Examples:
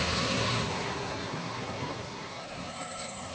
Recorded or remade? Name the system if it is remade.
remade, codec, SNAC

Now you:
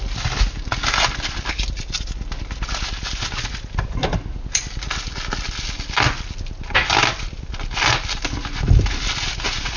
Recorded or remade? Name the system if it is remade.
recorded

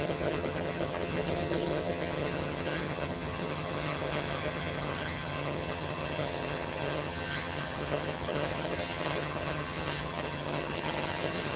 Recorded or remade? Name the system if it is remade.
remade, vocoder, HiFi-GAN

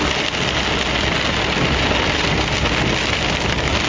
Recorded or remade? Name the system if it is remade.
recorded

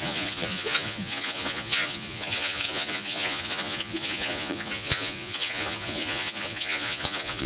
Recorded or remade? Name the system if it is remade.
remade, vocoder, Vocos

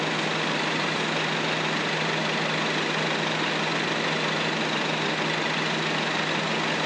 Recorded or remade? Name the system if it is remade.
recorded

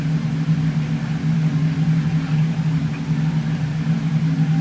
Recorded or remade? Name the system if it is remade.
recorded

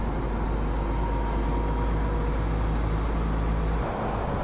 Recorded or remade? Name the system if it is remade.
recorded